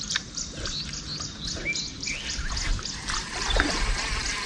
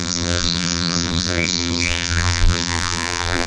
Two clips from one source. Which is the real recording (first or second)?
first